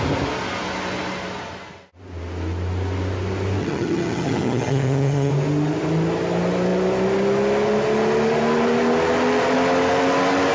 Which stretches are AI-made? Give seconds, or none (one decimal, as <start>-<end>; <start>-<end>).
3.6-5.3